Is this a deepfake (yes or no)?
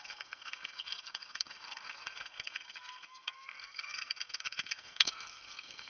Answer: yes